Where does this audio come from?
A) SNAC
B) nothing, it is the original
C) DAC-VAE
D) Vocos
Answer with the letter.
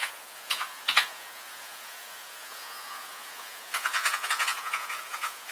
D